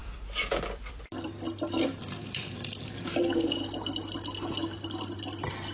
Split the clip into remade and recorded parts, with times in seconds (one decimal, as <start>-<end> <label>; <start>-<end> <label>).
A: 0.0-3.4 remade; 3.4-5.7 recorded